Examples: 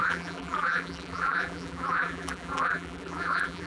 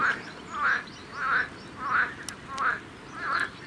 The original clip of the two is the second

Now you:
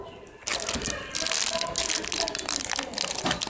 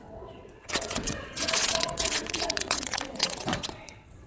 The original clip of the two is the first